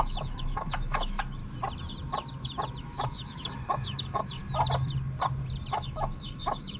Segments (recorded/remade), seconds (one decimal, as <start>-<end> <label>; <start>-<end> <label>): 0.0-1.4 remade; 1.4-2.8 recorded; 2.8-4.4 remade; 4.4-5.7 recorded; 5.7-6.8 remade